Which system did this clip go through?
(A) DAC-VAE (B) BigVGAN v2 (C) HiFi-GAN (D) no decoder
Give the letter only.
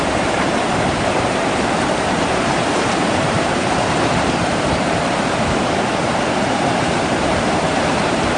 B